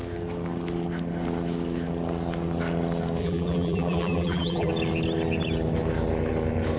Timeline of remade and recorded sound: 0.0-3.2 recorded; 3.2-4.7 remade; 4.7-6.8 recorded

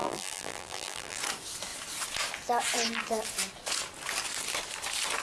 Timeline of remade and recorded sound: 0.0-1.2 remade; 1.2-5.2 recorded

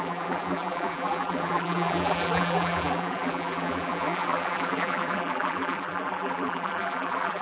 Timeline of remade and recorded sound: 0.0-7.4 remade

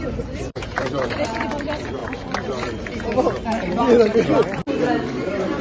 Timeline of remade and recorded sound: 0.0-2.0 remade; 2.0-5.6 recorded

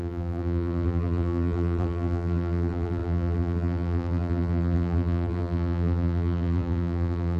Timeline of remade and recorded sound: 0.0-7.4 remade

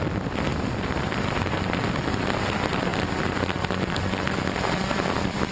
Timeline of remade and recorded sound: 0.0-2.9 remade; 2.9-3.9 recorded; 3.9-5.5 remade

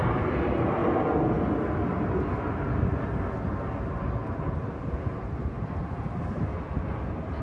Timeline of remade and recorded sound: 0.0-4.2 recorded; 4.2-6.5 remade; 6.5-7.4 recorded